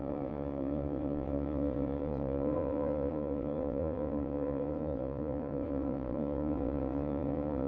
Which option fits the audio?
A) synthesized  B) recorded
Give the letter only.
A